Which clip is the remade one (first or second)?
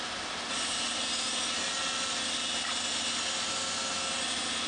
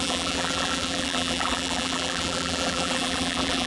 second